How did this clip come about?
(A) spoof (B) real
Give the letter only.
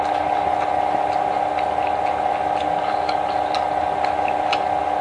B